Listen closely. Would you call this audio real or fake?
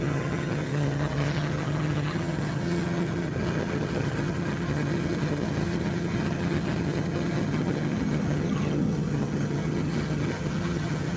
fake